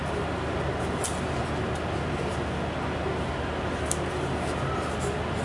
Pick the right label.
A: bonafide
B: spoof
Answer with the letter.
A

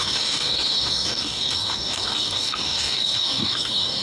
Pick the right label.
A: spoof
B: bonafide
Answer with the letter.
A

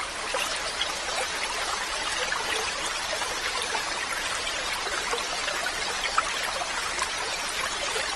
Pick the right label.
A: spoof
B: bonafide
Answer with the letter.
A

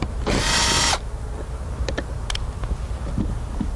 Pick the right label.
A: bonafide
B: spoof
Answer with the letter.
A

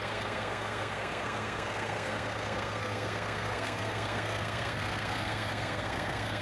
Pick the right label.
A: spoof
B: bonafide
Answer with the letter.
A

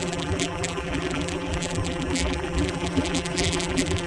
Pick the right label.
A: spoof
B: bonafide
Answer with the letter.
A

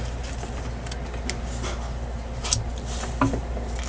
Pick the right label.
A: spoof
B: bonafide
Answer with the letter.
B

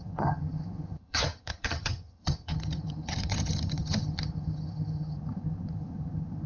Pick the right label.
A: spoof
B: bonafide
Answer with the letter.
A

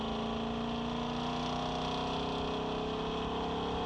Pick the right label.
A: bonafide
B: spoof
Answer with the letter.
A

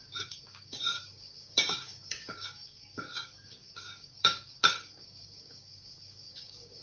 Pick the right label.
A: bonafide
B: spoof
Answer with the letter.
B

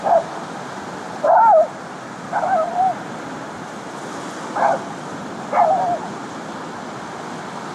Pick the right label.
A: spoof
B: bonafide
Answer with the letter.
B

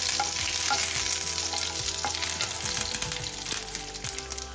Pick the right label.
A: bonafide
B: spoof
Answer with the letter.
A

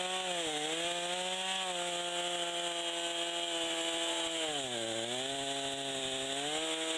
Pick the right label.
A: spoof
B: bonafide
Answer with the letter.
B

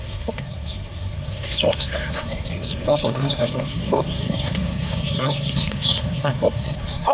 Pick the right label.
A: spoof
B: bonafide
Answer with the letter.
A